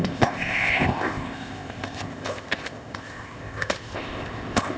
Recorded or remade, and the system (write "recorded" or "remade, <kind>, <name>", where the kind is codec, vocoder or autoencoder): remade, codec, ZipCodec